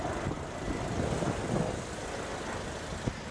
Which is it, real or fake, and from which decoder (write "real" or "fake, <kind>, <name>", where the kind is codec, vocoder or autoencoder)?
real